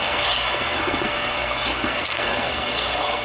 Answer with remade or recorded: remade